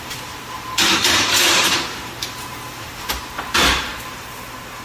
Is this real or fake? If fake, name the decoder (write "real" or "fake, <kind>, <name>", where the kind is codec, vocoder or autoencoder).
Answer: fake, vocoder, BigVGAN v2